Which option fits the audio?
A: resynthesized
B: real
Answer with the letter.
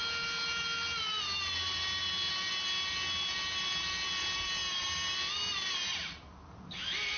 B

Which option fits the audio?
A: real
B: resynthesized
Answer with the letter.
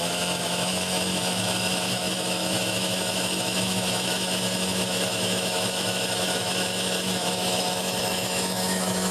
B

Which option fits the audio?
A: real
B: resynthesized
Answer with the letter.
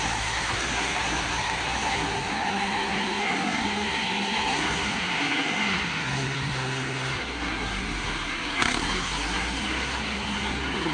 B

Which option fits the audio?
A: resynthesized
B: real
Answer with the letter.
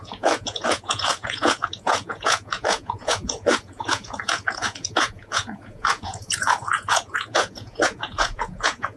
A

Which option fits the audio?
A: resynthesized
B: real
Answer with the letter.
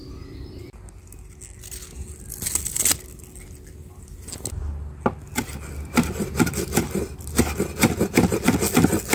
B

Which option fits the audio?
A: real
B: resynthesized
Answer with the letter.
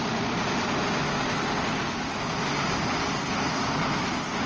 A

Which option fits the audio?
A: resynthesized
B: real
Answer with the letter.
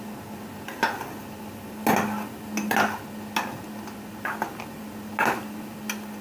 B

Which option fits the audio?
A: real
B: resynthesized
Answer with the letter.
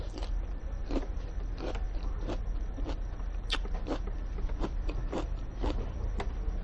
A